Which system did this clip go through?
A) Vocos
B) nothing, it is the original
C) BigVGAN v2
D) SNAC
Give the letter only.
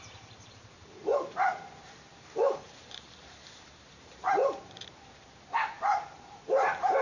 C